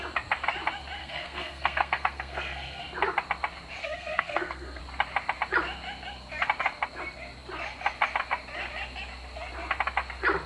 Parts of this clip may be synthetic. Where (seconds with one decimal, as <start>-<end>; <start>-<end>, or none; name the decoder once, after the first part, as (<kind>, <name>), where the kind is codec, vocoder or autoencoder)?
1.0-2.8 (codec, SNAC); 3.8-4.8